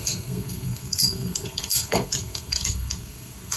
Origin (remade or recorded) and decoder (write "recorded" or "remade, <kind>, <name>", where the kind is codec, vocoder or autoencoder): remade, codec, SNAC